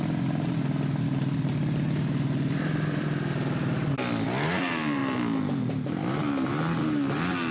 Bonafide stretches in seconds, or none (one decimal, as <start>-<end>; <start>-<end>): 0.0-7.5